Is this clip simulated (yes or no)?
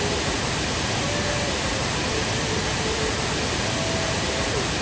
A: no